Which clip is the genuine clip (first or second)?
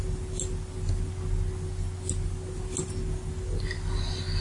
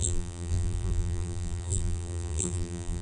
first